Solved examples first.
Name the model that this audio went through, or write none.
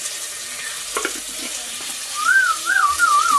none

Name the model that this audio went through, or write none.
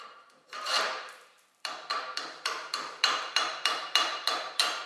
vocoder, BigVGAN v2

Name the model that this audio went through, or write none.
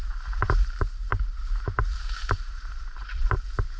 vocoder, BigVGAN v2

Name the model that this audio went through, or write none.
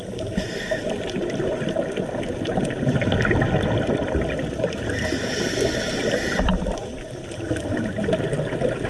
none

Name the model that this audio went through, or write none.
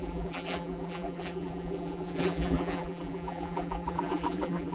vocoder, BigVGAN v2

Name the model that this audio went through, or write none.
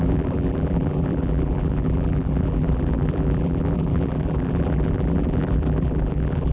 vocoder, BigVGAN v2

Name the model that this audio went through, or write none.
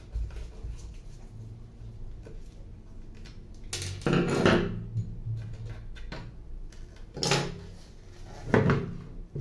none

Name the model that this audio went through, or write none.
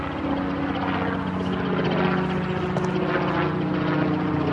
none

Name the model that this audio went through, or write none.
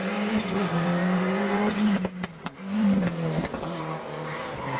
vocoder, BigVGAN v2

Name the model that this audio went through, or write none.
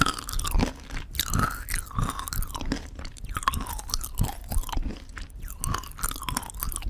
none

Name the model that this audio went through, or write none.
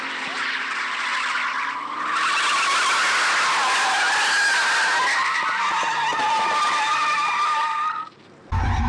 none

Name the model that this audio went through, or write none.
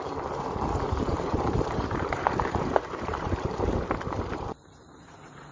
vocoder, BigVGAN v2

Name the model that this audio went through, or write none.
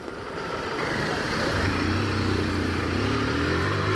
vocoder, BigVGAN v2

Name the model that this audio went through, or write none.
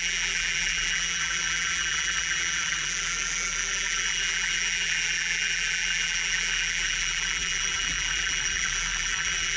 vocoder, BigVGAN v2